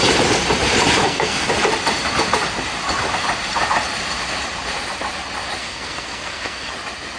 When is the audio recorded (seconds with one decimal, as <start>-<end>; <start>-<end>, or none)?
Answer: 0.0-1.0; 1.5-5.6; 6.7-7.2